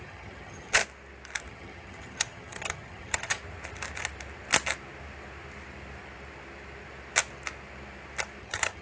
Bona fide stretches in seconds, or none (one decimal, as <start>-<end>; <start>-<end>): 0.8-1.4; 3.4-8.4